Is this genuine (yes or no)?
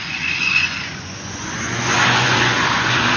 no